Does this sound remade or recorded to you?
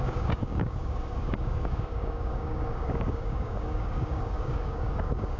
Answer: remade